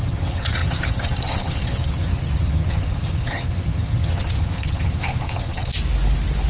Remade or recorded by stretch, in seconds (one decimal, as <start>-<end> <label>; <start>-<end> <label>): 0.0-5.7 remade; 5.7-6.5 recorded